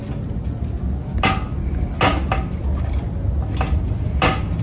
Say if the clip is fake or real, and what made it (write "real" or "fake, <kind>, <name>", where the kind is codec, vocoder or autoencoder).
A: real